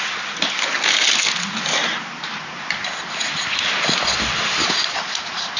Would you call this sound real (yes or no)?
yes